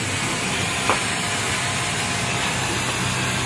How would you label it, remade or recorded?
recorded